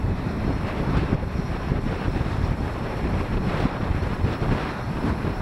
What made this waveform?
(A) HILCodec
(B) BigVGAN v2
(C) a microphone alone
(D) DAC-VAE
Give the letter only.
B